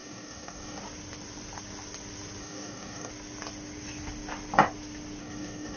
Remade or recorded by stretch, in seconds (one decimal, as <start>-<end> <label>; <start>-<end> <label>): 0.0-0.8 remade; 0.8-2.4 recorded; 2.4-3.1 remade; 3.1-5.2 recorded; 5.2-5.8 remade